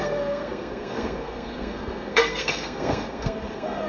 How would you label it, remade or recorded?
remade